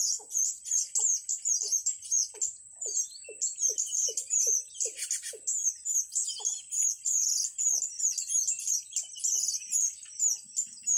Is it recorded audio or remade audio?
recorded